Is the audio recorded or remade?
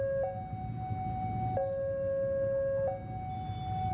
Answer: recorded